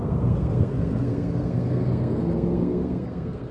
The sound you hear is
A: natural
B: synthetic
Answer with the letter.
B